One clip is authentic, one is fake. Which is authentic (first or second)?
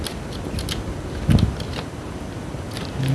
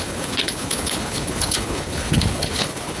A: first